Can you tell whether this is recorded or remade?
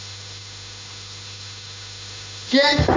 remade